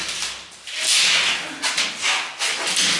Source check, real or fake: real